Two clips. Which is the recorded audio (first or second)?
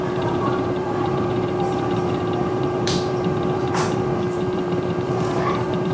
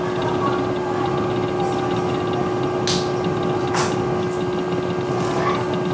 second